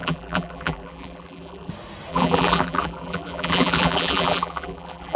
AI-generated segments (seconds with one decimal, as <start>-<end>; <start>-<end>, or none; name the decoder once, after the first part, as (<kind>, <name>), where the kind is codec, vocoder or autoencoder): 0.0-1.7 (vocoder, BigVGAN v2); 2.1-5.2

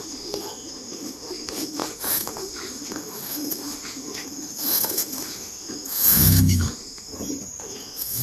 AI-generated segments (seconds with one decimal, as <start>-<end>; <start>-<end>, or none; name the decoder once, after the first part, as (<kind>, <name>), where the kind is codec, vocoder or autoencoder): 0.0-7.1 (autoencoder, DAC-VAE); 7.6-8.2

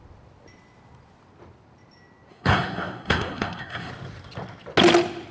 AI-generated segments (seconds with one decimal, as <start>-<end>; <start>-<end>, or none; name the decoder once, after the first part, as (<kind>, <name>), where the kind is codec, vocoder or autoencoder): 2.3-3.9 (codec, SNAC)

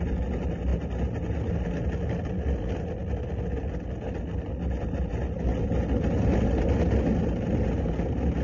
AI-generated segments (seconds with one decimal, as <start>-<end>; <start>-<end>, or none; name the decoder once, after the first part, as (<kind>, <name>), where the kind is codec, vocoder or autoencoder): none

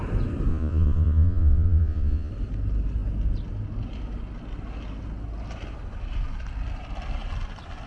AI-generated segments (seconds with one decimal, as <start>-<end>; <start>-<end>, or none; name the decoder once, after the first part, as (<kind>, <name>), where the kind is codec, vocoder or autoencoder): 0.5-2.3 (vocoder, Vocos)

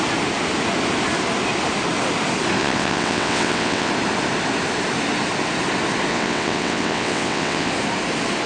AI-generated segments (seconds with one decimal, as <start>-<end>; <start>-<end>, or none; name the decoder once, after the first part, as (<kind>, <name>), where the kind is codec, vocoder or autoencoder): 2.6-3.9 (vocoder, WaveNeXt); 6.1-7.7